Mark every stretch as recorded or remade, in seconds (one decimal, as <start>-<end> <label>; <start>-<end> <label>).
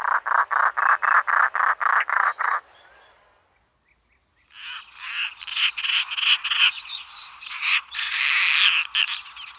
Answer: 0.0-2.1 recorded; 2.1-2.6 remade; 2.6-5.5 recorded; 5.5-8.2 remade; 8.2-9.6 recorded